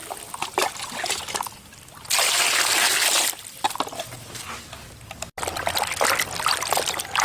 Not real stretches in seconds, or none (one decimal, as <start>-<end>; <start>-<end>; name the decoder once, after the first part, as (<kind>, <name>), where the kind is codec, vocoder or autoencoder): none